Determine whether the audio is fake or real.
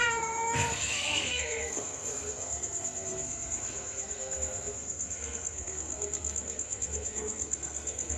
fake